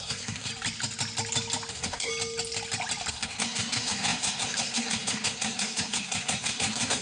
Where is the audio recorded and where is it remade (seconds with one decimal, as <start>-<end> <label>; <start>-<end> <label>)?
0.0-0.5 remade; 0.5-1.7 recorded; 1.7-2.1 remade; 2.1-3.1 recorded; 3.1-7.0 remade